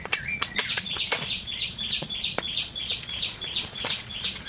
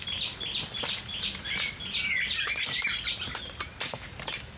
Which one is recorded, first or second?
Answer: second